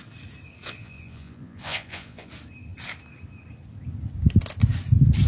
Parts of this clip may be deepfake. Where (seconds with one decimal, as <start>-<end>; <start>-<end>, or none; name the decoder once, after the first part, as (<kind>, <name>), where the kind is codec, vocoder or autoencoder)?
0.6-2.3 (vocoder, Vocos)